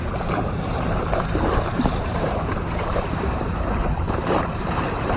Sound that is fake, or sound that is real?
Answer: fake